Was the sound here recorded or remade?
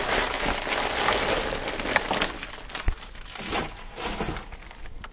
recorded